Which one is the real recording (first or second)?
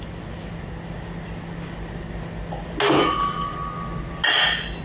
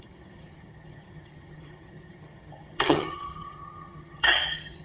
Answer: first